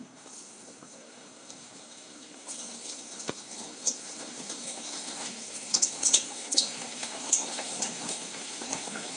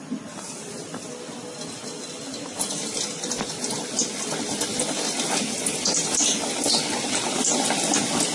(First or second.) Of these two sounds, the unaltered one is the second